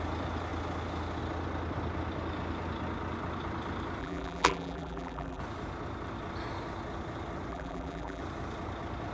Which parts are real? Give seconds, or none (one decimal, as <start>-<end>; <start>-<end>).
0.0-4.0; 5.4-7.5; 8.2-9.1